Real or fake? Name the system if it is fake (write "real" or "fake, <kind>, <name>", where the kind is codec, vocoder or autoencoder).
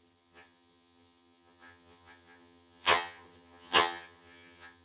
fake, vocoder, HiFi-GAN